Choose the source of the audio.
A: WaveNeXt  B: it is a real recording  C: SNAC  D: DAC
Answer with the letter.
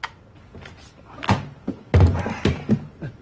B